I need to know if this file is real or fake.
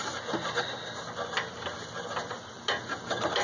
real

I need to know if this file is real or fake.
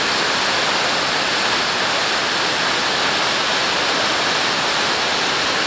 real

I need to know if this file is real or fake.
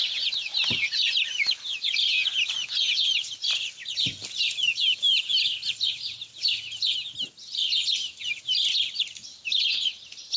real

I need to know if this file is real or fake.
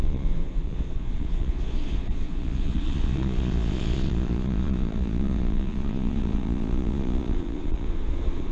fake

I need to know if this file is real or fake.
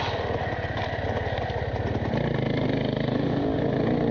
real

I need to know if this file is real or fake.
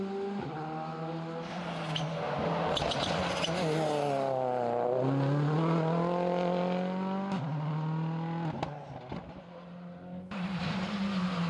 real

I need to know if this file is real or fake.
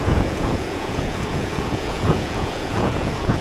fake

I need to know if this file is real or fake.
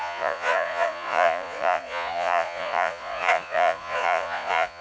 fake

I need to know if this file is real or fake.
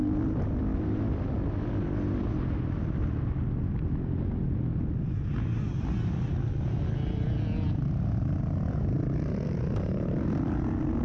real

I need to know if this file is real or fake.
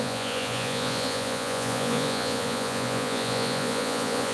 fake